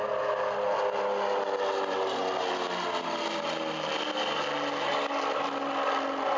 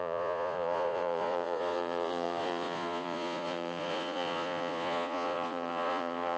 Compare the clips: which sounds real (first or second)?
first